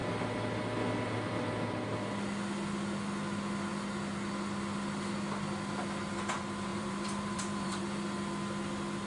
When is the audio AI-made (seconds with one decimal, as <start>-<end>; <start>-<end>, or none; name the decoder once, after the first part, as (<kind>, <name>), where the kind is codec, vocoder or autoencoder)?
6.7-7.8 (vocoder, BigVGAN v2)